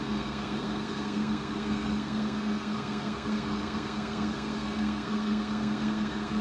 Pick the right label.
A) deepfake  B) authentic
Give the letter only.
A